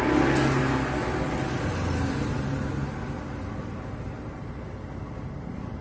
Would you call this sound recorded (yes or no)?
yes